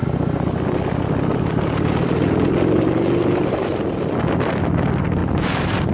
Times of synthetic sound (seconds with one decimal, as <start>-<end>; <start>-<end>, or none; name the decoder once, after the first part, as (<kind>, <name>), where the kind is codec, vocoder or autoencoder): none